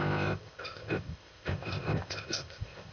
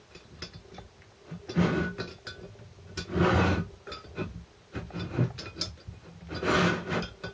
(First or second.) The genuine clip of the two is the second